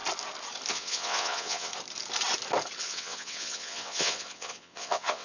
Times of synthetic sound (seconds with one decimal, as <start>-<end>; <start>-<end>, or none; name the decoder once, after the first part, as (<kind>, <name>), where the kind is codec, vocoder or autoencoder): 0.7-1.7 (vocoder, WaveNeXt); 2.8-5.2